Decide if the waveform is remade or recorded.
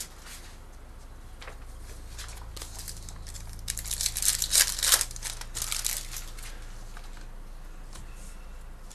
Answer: recorded